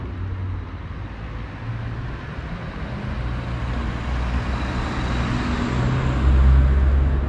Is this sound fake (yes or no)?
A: no